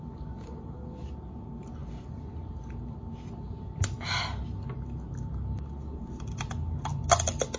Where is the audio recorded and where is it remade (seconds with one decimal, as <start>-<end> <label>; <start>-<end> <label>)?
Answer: 0.0-7.6 recorded